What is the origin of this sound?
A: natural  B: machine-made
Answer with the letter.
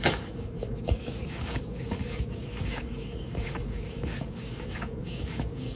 B